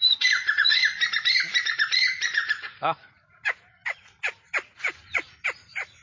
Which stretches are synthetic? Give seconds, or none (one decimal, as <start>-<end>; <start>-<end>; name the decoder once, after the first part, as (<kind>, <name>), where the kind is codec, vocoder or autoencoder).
0.0-0.8 (vocoder, Vocos); 1.6-6.0